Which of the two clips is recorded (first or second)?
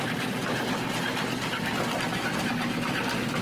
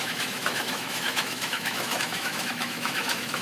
first